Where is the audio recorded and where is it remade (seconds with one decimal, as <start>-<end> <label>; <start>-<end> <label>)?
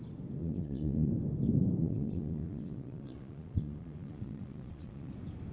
0.0-0.4 recorded; 0.4-1.1 remade; 1.1-1.8 recorded; 1.8-5.1 remade; 5.1-5.5 recorded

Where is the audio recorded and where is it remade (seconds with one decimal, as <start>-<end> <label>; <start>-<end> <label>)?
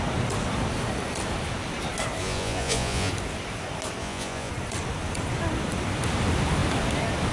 0.0-2.2 recorded; 2.2-3.1 remade; 3.1-4.0 recorded; 4.0-4.5 remade; 4.5-7.3 recorded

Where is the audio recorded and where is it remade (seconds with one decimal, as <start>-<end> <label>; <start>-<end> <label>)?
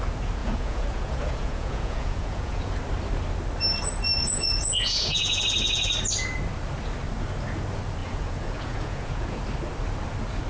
0.0-0.4 recorded; 0.4-2.7 remade; 2.7-4.2 recorded; 4.2-5.4 remade; 5.4-8.0 recorded; 8.0-9.4 remade; 9.4-10.5 recorded